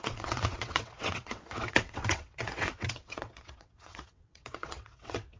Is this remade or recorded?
remade